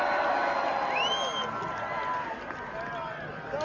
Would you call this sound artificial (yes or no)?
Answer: no